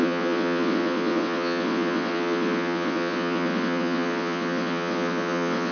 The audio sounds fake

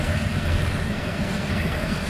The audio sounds fake